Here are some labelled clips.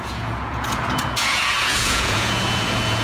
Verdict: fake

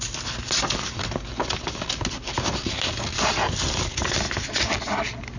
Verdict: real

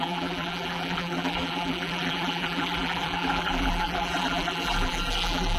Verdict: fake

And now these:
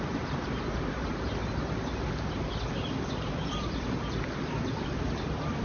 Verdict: real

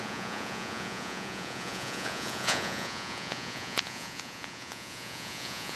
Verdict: fake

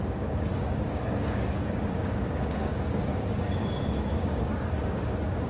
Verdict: fake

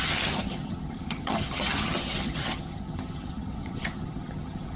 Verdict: fake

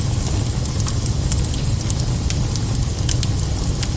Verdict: real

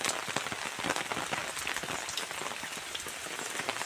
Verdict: real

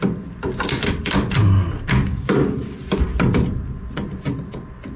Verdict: real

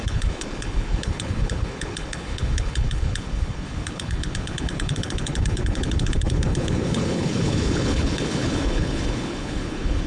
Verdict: fake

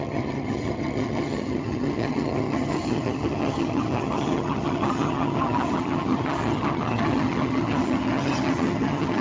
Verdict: fake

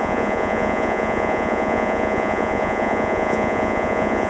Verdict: fake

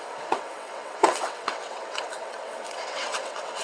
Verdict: fake